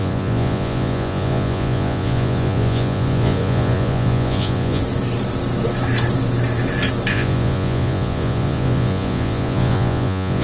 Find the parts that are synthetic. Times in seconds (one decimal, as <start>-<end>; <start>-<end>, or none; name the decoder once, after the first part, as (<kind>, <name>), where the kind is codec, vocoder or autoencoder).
0.0-4.8 (vocoder, Vocos); 7.1-10.4